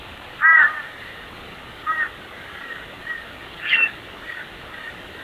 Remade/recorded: remade